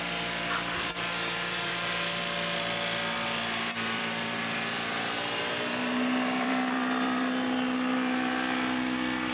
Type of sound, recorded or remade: remade